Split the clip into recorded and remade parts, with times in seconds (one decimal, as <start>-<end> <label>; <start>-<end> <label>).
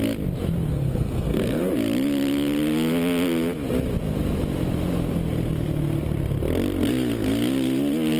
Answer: 0.0-0.7 recorded; 0.7-1.7 remade; 1.7-8.2 recorded